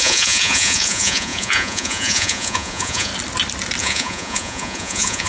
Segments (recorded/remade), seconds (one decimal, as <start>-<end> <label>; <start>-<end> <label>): 0.0-3.1 remade; 3.1-3.8 recorded; 3.8-5.3 remade

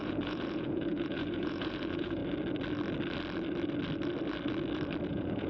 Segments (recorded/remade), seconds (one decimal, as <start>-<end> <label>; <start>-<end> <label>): 0.0-2.2 remade; 2.2-5.1 recorded; 5.1-5.5 remade

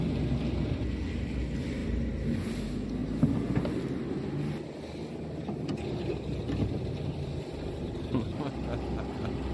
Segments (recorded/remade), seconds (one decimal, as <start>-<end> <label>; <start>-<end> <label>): 0.0-9.5 recorded

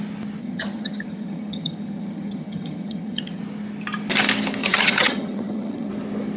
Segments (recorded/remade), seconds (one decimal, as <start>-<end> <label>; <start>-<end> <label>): 0.0-0.4 recorded; 0.4-3.4 remade; 3.4-4.6 recorded; 4.6-5.9 remade; 5.9-6.4 recorded

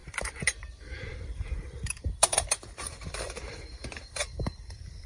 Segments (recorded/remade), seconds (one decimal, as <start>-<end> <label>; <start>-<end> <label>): 0.0-5.1 remade

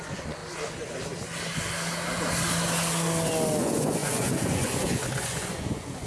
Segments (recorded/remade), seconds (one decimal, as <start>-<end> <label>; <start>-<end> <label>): 0.0-0.4 remade; 0.4-3.6 recorded; 3.6-6.1 remade